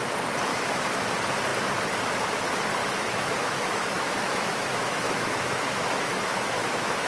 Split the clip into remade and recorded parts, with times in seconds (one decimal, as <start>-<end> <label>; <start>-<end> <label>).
0.0-0.5 recorded; 0.5-1.1 remade; 1.1-2.8 recorded; 2.8-7.1 remade